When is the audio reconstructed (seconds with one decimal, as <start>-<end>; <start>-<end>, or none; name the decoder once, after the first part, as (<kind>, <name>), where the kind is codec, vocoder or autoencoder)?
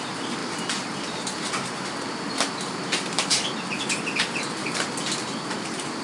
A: 0.4-3.8 (vocoder, BigVGAN v2); 4.6-5.3